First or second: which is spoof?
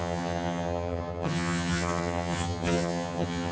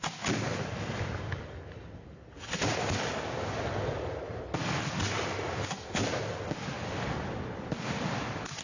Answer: first